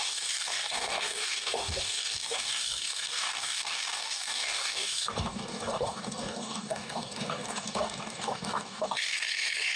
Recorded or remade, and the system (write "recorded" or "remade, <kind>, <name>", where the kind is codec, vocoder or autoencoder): remade, codec, DAC